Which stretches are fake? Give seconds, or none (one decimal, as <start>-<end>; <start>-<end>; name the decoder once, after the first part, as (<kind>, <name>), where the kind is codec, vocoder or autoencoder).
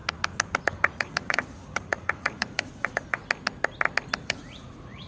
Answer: 0.6-3.2 (vocoder, Vocos); 4.2-5.1